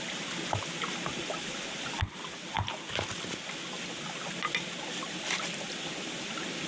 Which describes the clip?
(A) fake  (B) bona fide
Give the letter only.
B